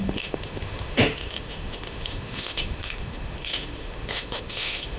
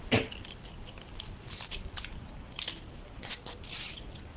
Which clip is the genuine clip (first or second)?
second